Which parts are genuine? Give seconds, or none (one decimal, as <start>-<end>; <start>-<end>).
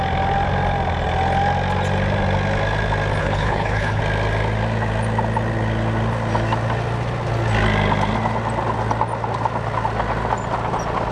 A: 0.0-3.2; 4.0-11.1